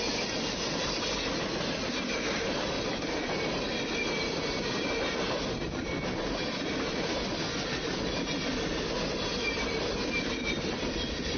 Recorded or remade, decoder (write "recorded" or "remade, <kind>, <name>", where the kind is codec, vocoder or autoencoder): recorded